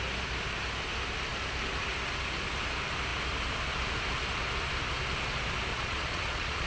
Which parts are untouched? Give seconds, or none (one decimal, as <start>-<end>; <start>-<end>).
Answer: 0.0-5.7